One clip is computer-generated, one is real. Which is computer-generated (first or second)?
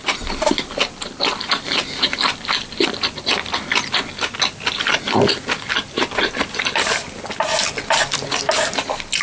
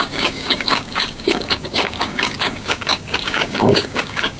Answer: second